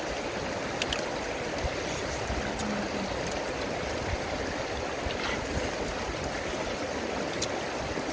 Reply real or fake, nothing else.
real